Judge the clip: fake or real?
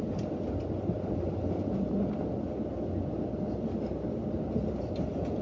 real